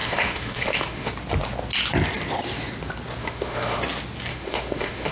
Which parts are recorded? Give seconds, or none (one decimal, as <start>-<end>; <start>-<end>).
1.1-3.2; 3.8-4.3